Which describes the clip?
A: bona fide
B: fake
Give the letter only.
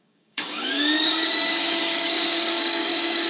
B